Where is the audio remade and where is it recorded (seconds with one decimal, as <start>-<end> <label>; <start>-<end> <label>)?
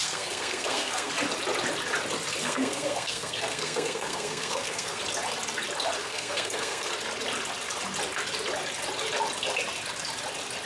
0.0-1.1 remade; 1.1-2.4 recorded; 2.4-5.0 remade; 5.0-6.0 recorded; 6.0-6.9 remade; 6.9-10.7 recorded